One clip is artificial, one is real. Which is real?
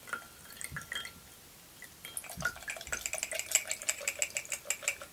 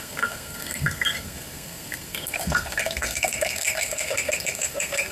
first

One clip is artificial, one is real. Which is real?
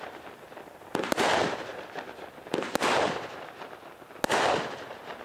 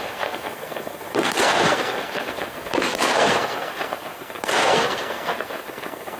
first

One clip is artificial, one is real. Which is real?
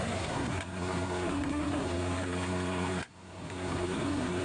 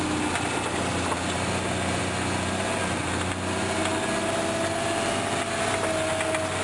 second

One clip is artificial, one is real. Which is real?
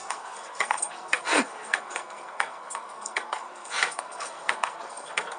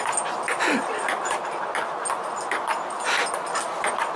second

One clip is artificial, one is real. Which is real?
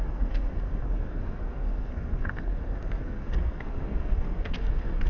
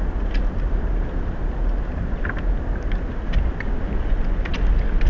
second